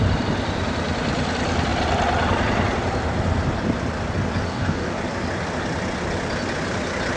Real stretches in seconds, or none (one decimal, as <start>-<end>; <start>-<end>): 0.0-4.5; 5.0-7.2